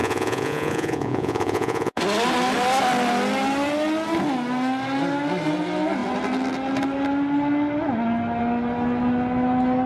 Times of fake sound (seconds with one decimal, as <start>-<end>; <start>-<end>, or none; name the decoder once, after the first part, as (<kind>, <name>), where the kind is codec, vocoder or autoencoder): 0.0-2.0 (vocoder, Vocos)